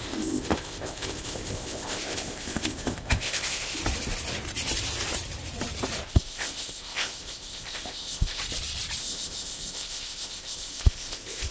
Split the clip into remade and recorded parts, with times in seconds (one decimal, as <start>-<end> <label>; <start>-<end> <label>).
0.0-3.8 remade; 3.8-6.1 recorded; 6.1-8.4 remade; 8.4-9.0 recorded; 9.0-11.5 remade